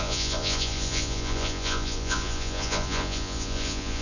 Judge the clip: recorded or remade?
remade